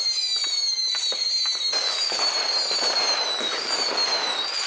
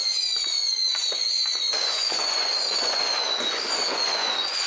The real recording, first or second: first